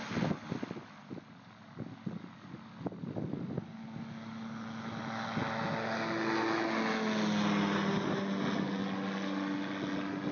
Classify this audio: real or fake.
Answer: real